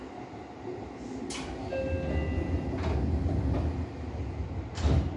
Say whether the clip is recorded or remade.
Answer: recorded